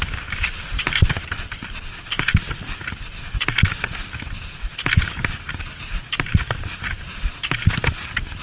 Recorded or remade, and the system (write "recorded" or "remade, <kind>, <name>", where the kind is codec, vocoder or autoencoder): recorded